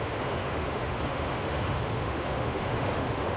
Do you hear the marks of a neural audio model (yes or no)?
yes